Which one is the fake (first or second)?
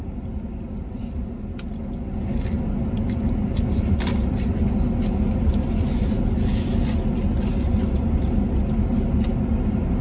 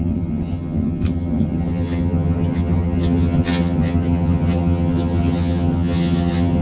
second